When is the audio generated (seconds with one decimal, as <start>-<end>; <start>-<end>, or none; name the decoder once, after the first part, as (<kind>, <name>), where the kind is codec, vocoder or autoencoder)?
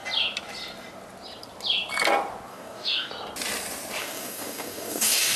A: 2.5-3.1 (codec, DAC); 4.0-5.4